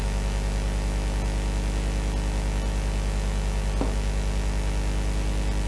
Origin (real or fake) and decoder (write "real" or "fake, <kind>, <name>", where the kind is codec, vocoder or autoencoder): real